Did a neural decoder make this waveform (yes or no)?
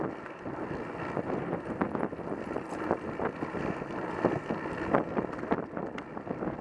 no